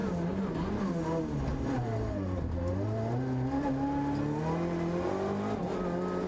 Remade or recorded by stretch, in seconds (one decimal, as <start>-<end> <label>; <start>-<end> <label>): 0.0-6.3 recorded